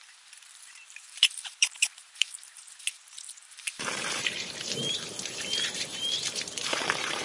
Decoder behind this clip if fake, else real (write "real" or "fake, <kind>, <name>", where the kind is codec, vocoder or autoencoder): fake, vocoder, BigVGAN v2